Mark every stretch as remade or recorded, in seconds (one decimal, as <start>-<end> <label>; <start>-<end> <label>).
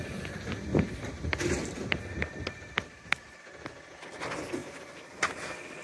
0.0-0.7 recorded; 0.7-3.4 remade; 3.4-5.8 recorded